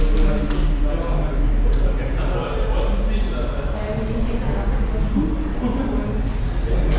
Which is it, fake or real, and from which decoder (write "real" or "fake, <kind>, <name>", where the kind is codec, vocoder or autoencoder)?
real